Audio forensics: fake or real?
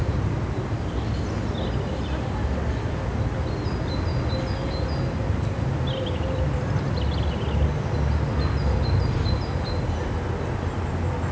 real